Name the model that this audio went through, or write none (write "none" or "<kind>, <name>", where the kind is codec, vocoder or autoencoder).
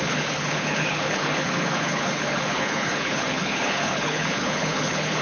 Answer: codec, HILCodec